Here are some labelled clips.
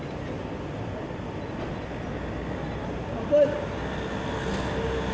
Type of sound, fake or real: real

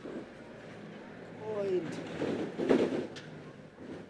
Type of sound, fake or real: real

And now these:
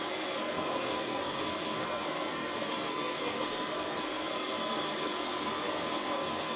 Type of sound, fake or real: fake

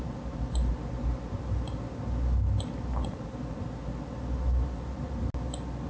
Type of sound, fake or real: real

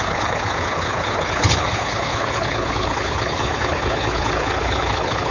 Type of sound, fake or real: fake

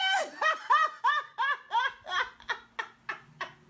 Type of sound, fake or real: real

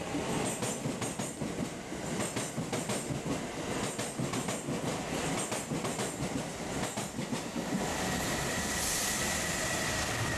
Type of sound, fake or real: real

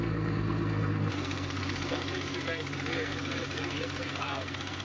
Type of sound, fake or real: fake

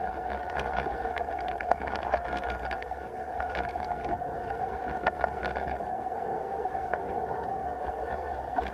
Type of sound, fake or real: fake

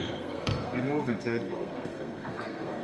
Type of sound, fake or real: fake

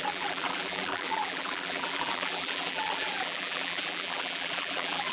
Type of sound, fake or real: fake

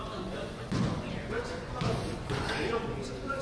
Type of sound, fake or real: fake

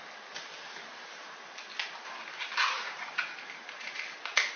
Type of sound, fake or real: real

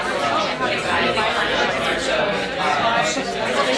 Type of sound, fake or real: real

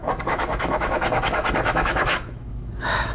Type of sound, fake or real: fake